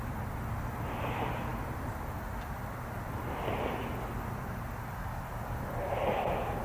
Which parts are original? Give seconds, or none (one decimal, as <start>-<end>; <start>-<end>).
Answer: 0.0-6.6